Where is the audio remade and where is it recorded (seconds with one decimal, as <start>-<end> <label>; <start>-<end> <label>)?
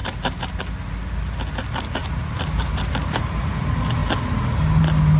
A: 0.0-2.0 recorded; 2.0-2.9 remade; 2.9-5.2 recorded